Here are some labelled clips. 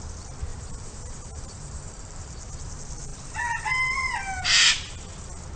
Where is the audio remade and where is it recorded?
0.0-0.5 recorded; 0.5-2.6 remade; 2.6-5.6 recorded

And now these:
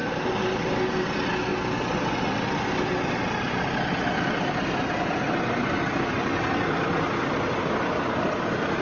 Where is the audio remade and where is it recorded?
0.0-0.7 remade; 0.7-8.8 recorded

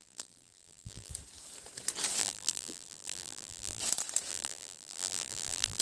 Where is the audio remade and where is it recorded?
0.0-1.1 remade; 1.1-2.2 recorded; 2.2-3.8 remade; 3.8-4.3 recorded; 4.3-5.8 remade

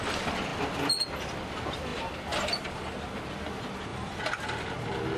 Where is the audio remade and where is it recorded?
0.0-3.9 recorded; 3.9-4.7 remade; 4.7-5.2 recorded

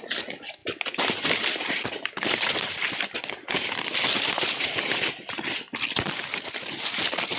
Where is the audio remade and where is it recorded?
0.0-7.4 recorded

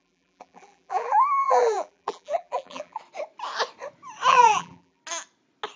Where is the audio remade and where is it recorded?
0.0-3.0 remade; 3.0-4.3 recorded; 4.3-5.0 remade; 5.0-5.8 recorded